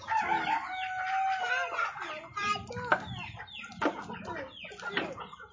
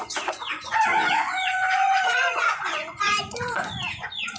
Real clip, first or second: first